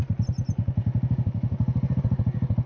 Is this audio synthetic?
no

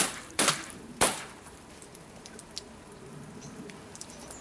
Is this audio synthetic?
yes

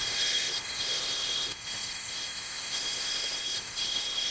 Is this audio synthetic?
yes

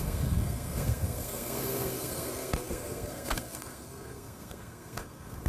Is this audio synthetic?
yes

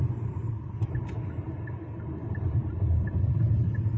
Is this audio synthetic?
yes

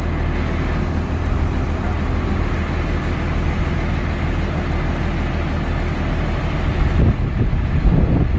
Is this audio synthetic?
no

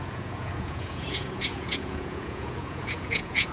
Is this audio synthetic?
yes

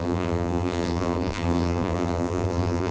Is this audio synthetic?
yes